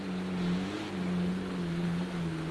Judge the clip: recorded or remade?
recorded